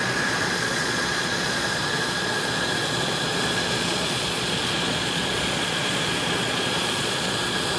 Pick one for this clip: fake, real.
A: fake